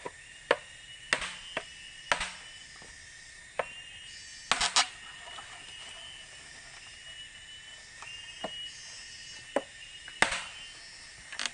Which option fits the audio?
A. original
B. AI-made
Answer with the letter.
A